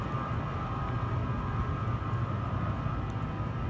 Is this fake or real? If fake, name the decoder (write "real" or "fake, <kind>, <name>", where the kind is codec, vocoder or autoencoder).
real